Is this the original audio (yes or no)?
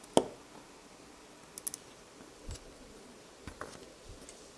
yes